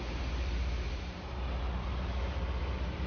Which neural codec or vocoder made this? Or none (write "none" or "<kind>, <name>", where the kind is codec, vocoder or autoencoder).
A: vocoder, BigVGAN v2